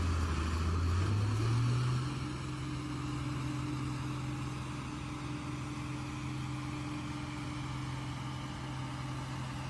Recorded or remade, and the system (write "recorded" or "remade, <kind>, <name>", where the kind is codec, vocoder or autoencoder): recorded